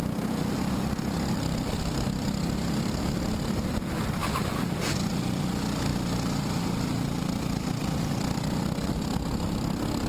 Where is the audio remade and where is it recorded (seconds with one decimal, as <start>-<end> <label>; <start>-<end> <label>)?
0.0-10.1 recorded